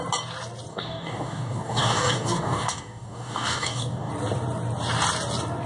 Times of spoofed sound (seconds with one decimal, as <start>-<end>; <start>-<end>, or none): 0.7-4.1